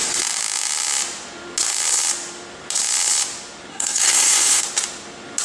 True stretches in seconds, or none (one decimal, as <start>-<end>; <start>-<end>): 0.0-3.7; 4.6-5.4